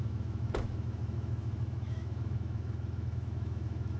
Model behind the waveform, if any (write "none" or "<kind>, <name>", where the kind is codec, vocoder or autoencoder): autoencoder, DAC-VAE